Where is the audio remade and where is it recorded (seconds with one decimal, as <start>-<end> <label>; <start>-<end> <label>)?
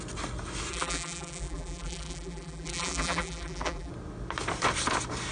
0.0-0.7 recorded; 0.7-3.9 remade; 3.9-5.3 recorded